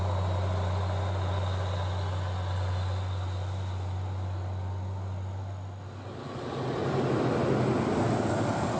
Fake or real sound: real